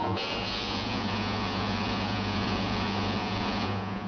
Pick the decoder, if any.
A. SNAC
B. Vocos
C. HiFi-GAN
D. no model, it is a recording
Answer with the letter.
B